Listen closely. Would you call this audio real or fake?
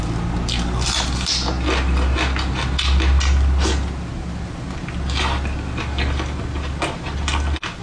real